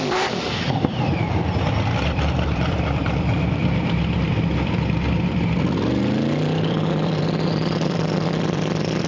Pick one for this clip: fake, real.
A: fake